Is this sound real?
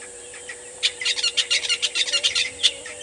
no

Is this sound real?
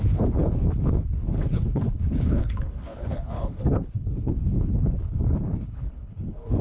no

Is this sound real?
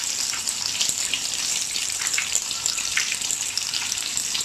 no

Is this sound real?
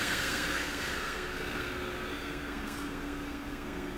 no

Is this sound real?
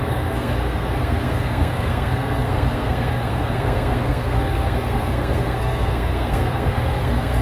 no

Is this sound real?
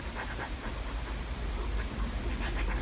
yes